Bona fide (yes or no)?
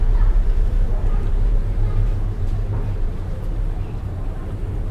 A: no